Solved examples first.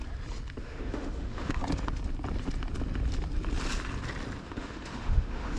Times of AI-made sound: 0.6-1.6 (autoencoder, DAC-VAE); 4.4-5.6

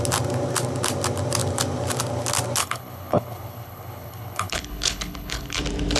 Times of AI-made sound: 2.6-5.6 (codec, HILCodec)

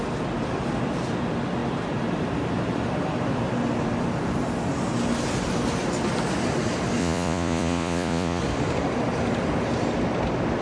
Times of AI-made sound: 7.0-8.4 (vocoder, Vocos)

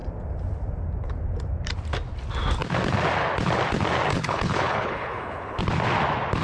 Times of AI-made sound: 4.1-5.6 (codec, HILCodec)